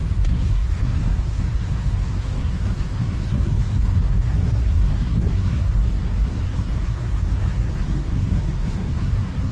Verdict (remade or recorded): remade